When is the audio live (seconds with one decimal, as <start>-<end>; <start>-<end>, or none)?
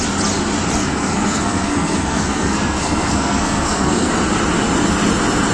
0.0-0.8; 4.1-5.5